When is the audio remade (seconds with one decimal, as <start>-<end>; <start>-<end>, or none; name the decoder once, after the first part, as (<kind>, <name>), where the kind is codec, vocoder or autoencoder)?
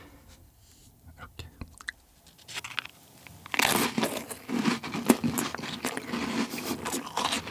none